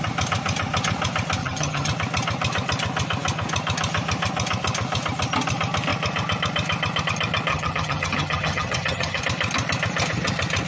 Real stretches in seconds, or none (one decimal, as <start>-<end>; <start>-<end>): 0.0-1.4; 1.9-7.5; 9.2-10.7